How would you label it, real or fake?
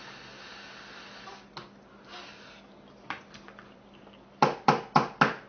real